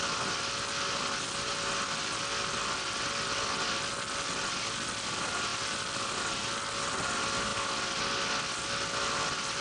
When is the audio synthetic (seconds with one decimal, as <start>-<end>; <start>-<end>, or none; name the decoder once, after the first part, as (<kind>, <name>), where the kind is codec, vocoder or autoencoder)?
5.5-6.2 (vocoder, BigVGAN v2); 7.5-8.0